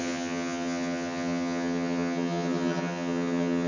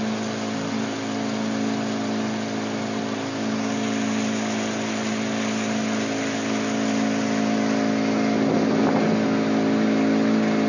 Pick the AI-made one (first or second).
first